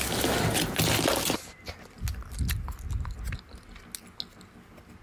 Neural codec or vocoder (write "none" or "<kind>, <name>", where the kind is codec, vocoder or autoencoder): none